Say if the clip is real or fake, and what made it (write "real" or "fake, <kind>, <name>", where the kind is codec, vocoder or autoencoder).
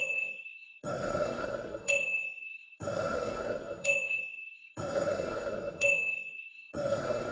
fake, codec, SNAC